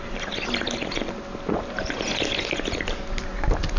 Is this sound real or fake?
real